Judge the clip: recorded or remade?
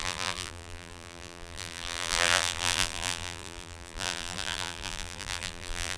remade